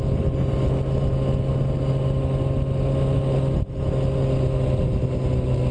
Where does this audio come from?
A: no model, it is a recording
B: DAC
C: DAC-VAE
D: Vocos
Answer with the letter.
A